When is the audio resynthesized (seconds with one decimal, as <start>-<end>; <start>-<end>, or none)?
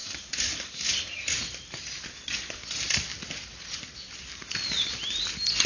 0.0-0.9